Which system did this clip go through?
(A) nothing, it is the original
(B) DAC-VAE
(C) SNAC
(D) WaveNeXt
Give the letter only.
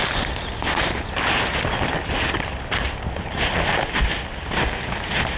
A